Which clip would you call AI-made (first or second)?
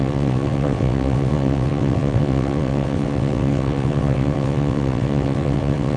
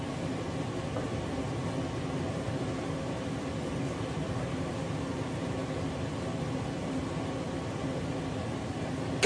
first